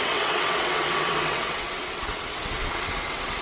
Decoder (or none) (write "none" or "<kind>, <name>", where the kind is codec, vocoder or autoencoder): vocoder, WaveNeXt